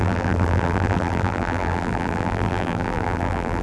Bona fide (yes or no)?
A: no